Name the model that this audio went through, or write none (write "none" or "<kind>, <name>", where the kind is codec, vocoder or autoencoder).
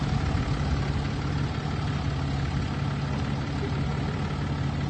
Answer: none